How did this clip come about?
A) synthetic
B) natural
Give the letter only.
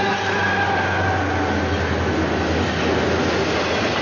B